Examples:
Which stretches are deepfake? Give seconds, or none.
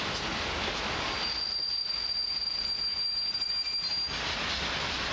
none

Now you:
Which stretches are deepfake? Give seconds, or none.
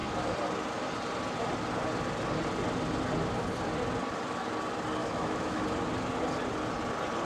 5.0-5.6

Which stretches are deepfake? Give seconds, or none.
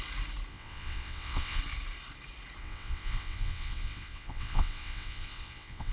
0.5-1.6; 2.6-5.9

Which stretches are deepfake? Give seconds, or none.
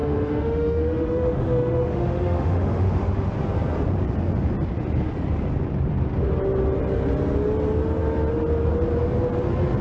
0.0-3.3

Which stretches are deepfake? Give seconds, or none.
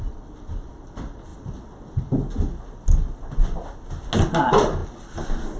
none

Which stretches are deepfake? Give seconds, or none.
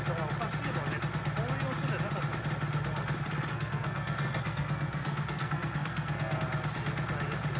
3.5-6.4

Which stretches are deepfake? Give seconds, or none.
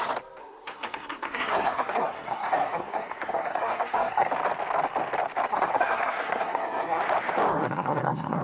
0.4-4.3; 5.5-7.0; 7.5-8.4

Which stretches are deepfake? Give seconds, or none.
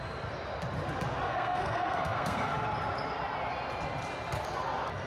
1.3-2.5